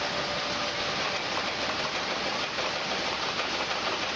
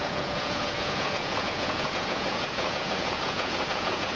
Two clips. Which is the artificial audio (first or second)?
second